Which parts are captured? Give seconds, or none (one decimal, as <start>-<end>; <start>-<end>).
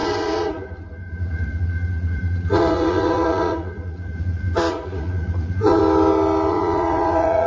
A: 5.8-6.5